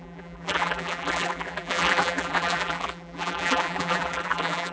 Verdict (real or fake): fake